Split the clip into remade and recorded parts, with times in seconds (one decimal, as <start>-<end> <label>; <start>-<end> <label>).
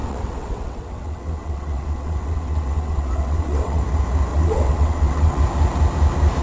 0.0-3.8 remade; 3.8-4.3 recorded; 4.3-5.4 remade; 5.4-6.4 recorded